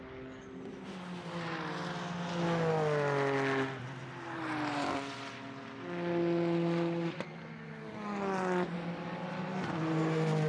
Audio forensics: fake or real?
real